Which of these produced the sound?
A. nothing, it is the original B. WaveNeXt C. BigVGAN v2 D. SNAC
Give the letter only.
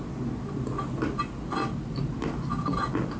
A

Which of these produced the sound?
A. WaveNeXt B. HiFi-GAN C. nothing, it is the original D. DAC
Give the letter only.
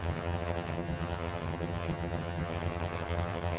B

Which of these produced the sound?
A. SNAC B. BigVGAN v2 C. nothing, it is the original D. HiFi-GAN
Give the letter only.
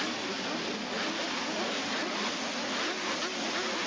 C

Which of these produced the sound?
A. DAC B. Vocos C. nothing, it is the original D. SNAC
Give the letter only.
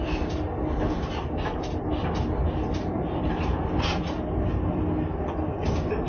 C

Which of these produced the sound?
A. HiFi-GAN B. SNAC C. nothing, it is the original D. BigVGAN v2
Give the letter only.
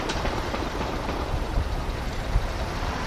D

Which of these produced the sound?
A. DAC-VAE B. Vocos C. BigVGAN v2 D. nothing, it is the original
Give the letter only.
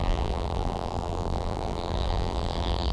C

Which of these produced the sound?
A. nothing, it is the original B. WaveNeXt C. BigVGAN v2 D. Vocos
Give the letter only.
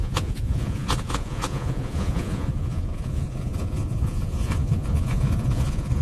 D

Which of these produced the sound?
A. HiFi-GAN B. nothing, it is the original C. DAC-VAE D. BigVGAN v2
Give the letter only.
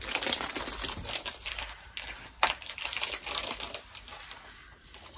D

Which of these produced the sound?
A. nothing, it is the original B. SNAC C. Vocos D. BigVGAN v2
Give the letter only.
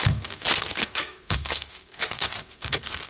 B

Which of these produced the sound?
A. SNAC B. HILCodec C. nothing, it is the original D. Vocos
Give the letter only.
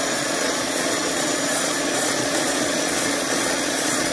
D